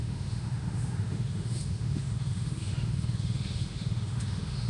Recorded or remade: remade